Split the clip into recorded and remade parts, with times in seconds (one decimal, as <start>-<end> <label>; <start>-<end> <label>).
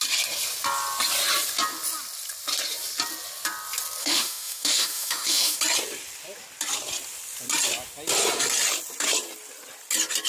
0.0-4.0 recorded; 4.0-5.6 remade; 5.6-10.3 recorded